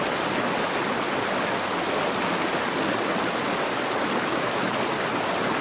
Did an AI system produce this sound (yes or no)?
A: no